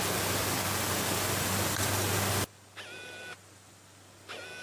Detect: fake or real real